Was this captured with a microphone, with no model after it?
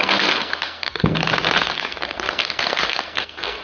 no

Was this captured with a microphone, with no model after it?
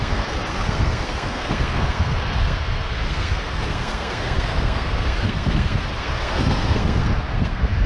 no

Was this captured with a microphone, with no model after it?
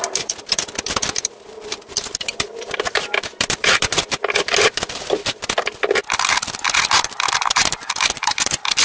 no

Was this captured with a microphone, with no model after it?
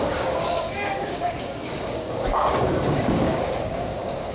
no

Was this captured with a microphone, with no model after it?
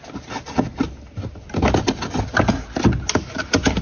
yes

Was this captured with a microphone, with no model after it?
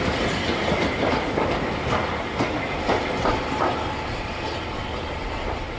yes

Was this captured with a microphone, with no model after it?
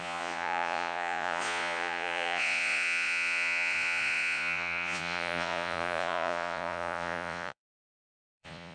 no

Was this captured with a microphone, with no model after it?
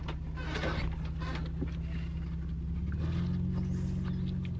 yes